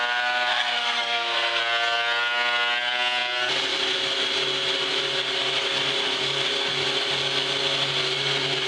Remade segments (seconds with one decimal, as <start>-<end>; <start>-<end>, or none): 0.5-1.6